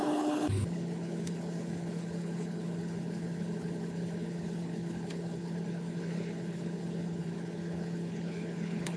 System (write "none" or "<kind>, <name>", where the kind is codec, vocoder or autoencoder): codec, HILCodec